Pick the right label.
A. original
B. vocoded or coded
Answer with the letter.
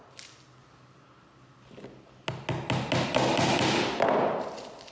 A